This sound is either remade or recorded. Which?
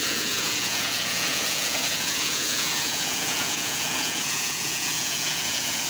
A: remade